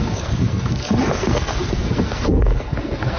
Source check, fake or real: fake